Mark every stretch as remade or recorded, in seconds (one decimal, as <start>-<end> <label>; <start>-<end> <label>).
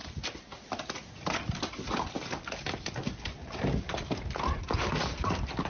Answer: 0.0-5.7 recorded